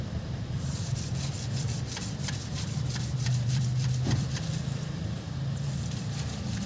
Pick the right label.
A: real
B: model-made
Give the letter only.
B